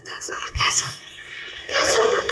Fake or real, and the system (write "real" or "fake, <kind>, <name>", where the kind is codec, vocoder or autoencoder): fake, codec, SNAC